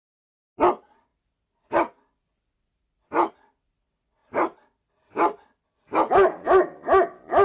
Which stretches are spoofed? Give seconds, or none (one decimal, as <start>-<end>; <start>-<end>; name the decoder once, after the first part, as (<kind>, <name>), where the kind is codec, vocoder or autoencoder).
none